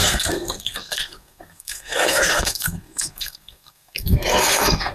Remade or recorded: remade